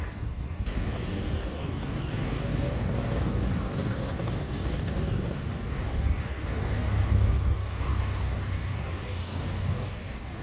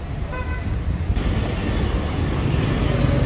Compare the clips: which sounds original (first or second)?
second